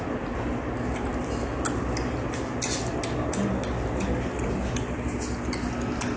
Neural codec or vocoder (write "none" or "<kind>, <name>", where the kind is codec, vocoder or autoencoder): none